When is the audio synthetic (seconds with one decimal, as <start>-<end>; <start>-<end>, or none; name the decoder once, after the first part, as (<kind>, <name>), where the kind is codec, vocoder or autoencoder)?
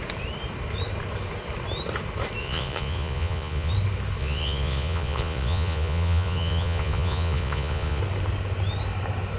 2.4-3.7 (vocoder, Vocos); 4.2-8.0